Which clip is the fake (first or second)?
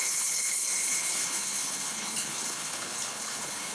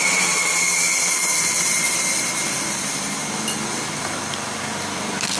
first